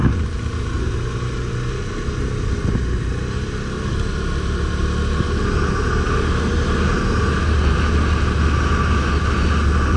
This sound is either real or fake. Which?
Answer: real